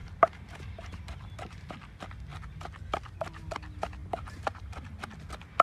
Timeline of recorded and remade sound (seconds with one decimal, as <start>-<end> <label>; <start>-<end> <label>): 0.0-1.0 remade; 1.0-4.0 recorded; 4.0-5.0 remade; 5.0-5.6 recorded